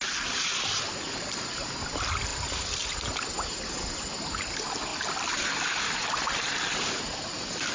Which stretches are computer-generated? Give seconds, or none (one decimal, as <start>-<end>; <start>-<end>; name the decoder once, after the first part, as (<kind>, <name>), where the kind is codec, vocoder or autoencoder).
none